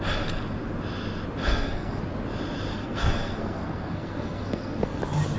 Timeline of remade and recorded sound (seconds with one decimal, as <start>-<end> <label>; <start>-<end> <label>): 0.0-1.4 recorded; 1.4-2.0 remade; 2.0-2.7 recorded; 2.7-5.0 remade; 5.0-5.4 recorded